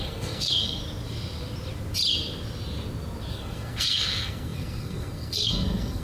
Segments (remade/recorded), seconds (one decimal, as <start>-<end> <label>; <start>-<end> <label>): 0.0-0.8 remade; 0.8-3.3 recorded; 3.3-6.0 remade